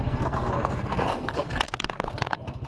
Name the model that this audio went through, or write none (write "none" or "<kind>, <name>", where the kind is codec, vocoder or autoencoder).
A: codec, SNAC